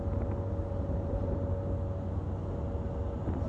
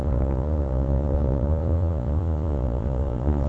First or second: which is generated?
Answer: second